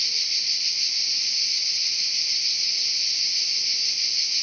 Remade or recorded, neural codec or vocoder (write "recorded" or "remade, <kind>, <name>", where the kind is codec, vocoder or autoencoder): recorded